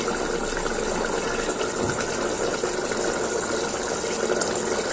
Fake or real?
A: real